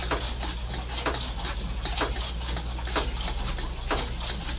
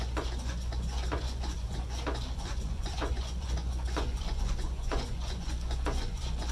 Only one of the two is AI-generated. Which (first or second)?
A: second